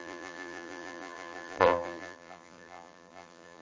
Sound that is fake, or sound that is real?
fake